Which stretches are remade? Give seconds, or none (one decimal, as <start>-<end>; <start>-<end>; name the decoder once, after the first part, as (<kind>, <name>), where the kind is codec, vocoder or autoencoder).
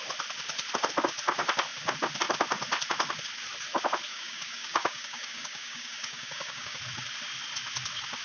4.1-6.8 (codec, DAC)